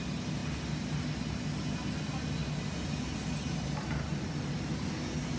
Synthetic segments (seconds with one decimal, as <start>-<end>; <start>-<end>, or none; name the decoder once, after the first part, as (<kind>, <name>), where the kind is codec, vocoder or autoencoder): none